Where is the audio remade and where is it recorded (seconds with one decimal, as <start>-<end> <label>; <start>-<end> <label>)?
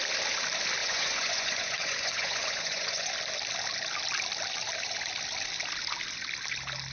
0.0-0.8 recorded; 0.8-3.1 remade; 3.1-6.9 recorded